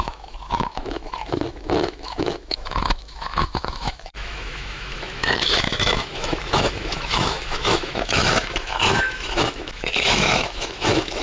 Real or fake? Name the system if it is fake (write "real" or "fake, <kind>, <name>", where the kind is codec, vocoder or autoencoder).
fake, autoencoder, DAC-VAE